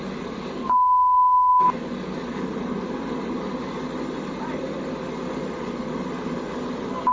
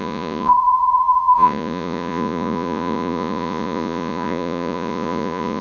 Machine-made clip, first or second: second